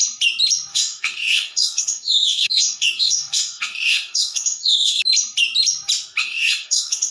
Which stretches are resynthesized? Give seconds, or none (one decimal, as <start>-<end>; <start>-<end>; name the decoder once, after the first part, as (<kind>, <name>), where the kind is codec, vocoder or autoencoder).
0.7-5.0 (codec, DAC); 6.2-7.1